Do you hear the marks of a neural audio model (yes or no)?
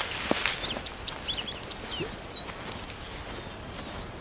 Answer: no